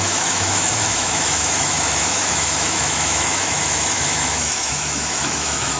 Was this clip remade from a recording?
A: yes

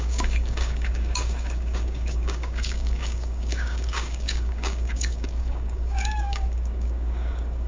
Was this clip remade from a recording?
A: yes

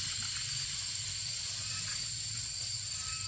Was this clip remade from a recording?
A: no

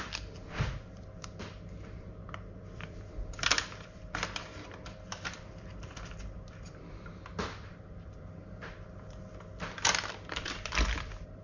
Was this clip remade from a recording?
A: yes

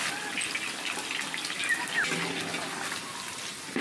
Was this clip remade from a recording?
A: no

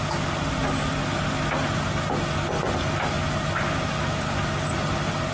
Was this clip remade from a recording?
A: no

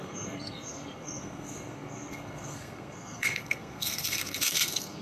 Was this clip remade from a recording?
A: yes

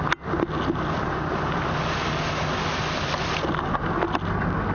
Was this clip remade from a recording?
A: no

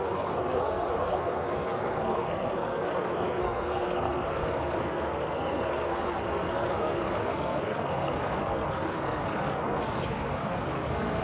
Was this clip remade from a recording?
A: yes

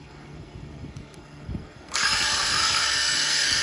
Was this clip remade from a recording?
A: yes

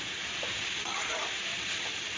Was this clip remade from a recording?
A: no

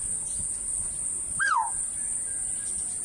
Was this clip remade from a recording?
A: no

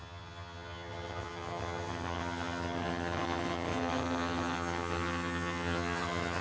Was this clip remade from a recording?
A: yes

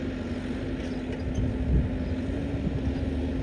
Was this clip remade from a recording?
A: no